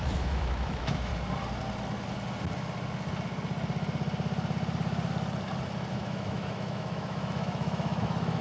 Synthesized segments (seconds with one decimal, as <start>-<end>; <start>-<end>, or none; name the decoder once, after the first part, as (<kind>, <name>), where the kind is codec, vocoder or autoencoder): 0.0-1.1 (autoencoder, DAC-VAE); 5.9-8.4